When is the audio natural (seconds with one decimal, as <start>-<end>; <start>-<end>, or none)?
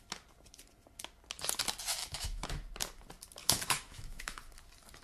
0.0-2.0; 2.5-3.4; 4.4-5.0